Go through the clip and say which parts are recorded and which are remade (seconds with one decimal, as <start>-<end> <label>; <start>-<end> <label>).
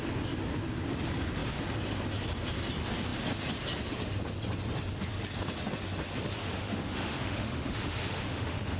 0.0-6.4 recorded; 6.4-8.8 remade